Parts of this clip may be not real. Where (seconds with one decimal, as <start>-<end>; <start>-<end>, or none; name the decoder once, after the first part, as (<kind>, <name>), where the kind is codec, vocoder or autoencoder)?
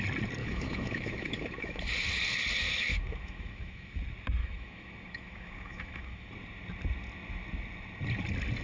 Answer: 0.4-1.8 (autoencoder, DAC-VAE); 2.9-4.0; 4.4-6.3